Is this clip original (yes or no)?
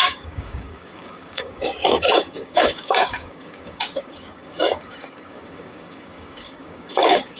no